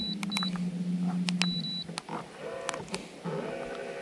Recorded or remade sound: recorded